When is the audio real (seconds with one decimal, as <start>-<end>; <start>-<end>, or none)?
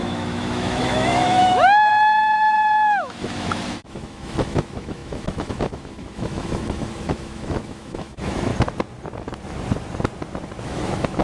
8.5-10.6